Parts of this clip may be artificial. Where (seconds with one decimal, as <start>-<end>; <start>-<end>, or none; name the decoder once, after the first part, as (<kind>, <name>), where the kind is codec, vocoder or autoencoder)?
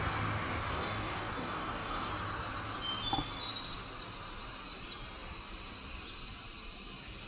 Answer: 0.7-2.1 (codec, DAC)